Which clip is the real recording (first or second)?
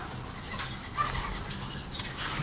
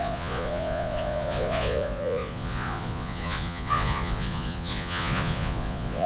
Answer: first